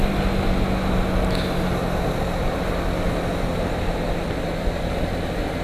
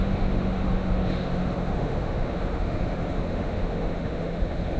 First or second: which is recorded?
first